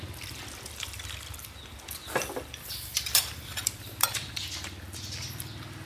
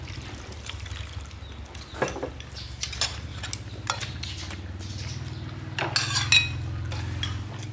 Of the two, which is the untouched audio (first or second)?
second